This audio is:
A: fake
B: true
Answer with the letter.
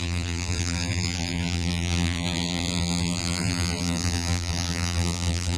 A